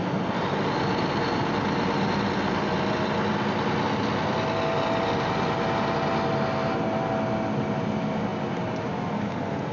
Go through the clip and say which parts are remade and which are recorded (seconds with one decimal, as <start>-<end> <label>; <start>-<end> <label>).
0.0-9.7 recorded